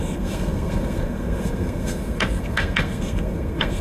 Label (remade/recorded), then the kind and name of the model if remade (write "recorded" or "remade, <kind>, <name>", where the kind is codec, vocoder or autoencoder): remade, codec, SNAC